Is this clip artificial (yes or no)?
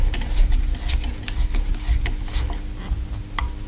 no